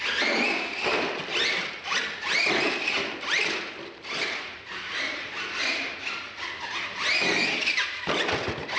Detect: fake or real real